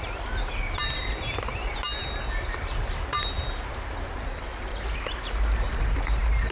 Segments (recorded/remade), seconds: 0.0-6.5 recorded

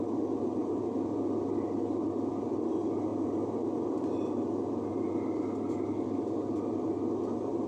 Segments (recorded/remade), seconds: 0.0-7.7 recorded

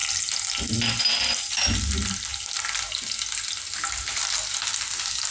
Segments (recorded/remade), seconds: 0.0-5.3 recorded

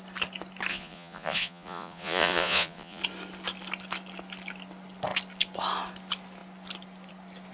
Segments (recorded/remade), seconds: 0.0-0.7 recorded; 0.7-3.0 remade; 3.0-7.5 recorded